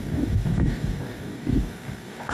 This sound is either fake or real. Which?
fake